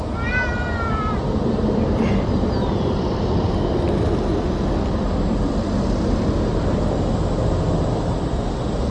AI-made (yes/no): no